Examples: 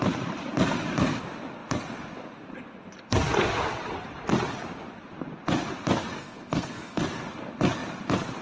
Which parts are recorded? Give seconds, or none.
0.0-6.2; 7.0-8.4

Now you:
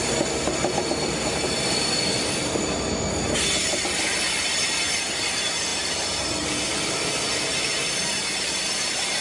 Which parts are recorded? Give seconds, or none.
0.0-9.2

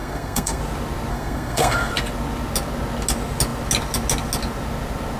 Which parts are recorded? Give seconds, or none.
0.6-1.1; 1.9-5.2

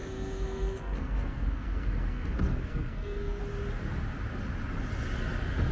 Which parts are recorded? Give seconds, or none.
3.4-5.7

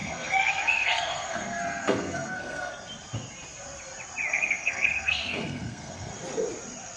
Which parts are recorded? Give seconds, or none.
2.7-4.3; 6.1-7.0

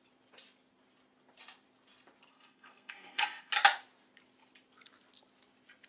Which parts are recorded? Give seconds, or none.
0.0-2.3; 3.5-5.9

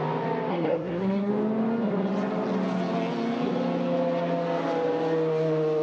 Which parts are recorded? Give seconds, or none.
0.0-0.5; 1.3-5.8